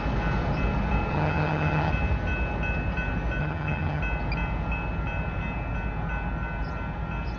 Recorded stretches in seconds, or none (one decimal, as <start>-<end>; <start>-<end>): 0.0-1.1; 1.9-3.4; 4.0-7.4